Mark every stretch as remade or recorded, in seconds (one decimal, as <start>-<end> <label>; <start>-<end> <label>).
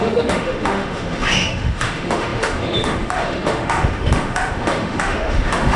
0.0-5.8 remade